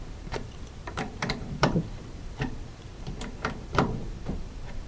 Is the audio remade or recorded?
remade